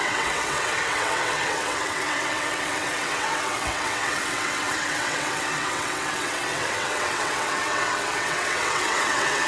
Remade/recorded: remade